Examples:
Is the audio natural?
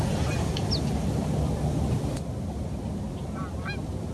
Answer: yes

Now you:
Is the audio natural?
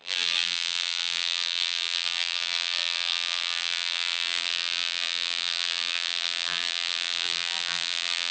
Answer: no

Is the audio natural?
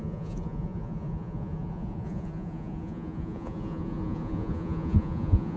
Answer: no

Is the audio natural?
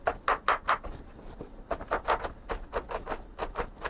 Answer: yes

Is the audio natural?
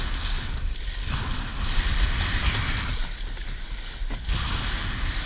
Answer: yes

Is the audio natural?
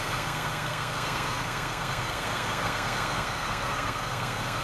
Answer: no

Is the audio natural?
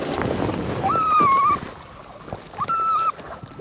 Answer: yes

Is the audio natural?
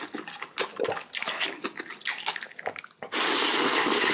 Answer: yes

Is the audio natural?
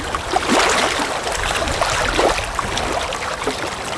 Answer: yes